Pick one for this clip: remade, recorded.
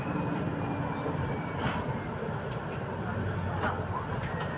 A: recorded